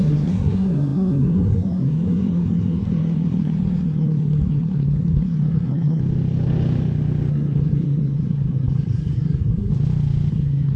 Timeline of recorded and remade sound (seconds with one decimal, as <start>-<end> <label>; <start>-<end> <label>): 0.0-6.0 remade; 6.0-7.3 recorded; 7.3-9.7 remade; 9.7-10.3 recorded; 10.3-10.8 remade